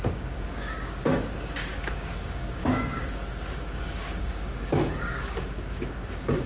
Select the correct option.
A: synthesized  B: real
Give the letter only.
A